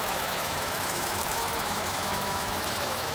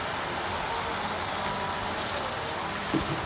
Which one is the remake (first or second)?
first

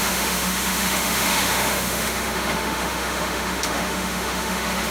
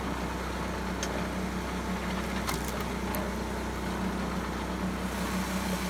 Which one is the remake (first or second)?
first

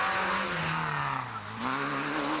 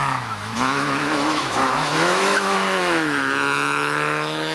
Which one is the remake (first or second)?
second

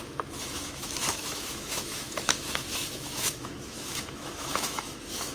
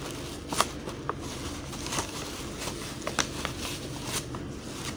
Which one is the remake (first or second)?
first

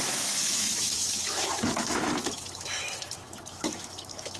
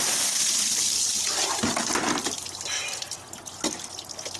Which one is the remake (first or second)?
first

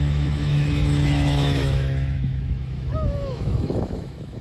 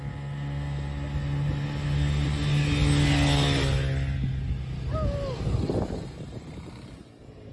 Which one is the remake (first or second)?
first